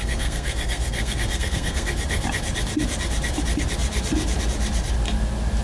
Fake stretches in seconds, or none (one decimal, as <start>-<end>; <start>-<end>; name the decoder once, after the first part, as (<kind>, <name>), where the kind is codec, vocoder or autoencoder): 0.0-1.9 (codec, SNAC)